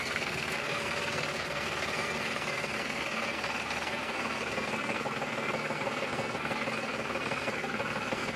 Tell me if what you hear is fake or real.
fake